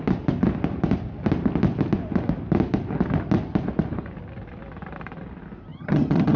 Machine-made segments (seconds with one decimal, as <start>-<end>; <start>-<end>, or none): 5.7-6.4